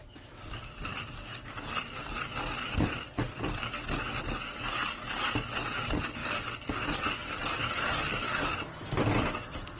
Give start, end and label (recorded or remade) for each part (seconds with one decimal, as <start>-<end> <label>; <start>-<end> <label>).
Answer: 0.0-3.6 remade; 3.6-6.2 recorded; 6.2-6.7 remade; 6.7-7.2 recorded; 7.2-8.8 remade; 8.8-9.8 recorded